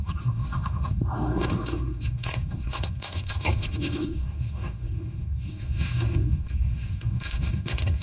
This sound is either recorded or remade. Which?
remade